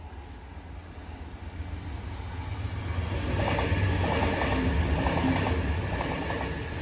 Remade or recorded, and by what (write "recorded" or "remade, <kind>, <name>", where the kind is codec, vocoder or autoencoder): recorded